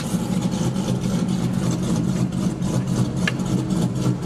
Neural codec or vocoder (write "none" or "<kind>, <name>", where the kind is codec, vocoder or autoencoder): none